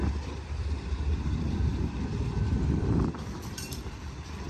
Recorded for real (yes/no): no